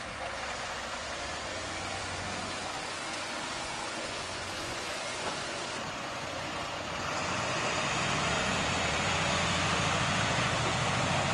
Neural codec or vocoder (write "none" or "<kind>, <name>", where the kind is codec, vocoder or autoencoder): vocoder, Vocos